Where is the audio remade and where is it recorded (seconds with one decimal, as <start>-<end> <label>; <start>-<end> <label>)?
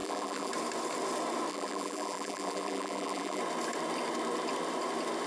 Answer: 0.0-0.5 remade; 0.5-1.5 recorded; 1.5-3.4 remade; 3.4-5.3 recorded